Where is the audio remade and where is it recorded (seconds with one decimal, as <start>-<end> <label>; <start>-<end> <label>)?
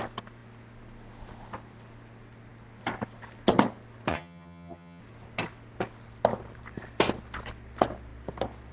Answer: 0.0-4.1 recorded; 4.1-5.0 remade; 5.0-8.7 recorded